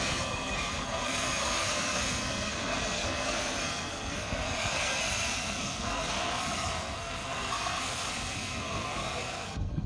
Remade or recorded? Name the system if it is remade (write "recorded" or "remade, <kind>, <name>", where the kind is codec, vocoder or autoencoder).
remade, codec, SNAC